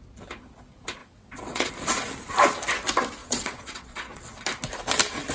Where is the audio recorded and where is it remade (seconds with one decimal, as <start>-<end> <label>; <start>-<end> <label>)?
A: 0.0-1.0 recorded; 1.0-1.7 remade; 1.7-3.2 recorded; 3.2-4.2 remade; 4.2-5.3 recorded